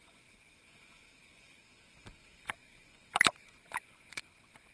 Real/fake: fake